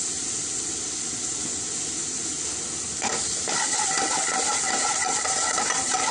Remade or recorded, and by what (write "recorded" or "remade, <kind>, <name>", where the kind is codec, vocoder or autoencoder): recorded